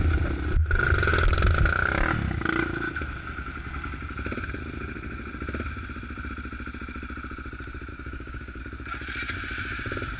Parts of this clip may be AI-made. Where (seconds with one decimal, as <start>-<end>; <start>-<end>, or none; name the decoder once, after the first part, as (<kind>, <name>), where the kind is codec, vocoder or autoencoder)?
7.9-8.6 (codec, DAC)